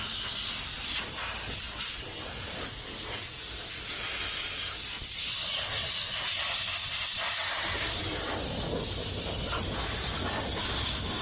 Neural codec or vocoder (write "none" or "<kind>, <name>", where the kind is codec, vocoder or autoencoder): none